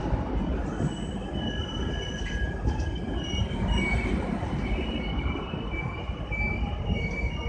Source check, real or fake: real